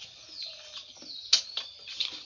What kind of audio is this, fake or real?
real